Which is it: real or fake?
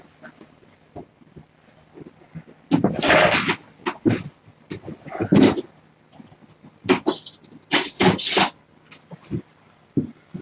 real